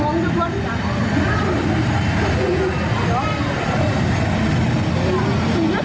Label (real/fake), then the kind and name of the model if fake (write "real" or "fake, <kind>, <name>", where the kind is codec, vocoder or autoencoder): real